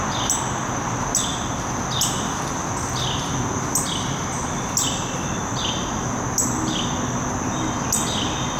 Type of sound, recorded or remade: recorded